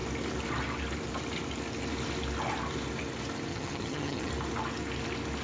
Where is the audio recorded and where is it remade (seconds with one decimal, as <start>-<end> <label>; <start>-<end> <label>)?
0.0-3.5 recorded; 3.5-4.3 remade; 4.3-5.4 recorded